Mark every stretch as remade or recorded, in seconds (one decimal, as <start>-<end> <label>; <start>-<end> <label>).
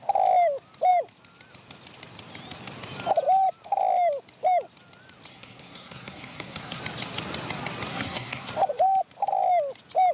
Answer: 0.0-5.3 recorded; 5.3-6.8 remade; 6.8-7.9 recorded; 7.9-8.5 remade; 8.5-10.1 recorded